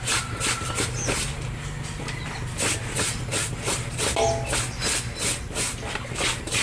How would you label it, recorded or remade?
recorded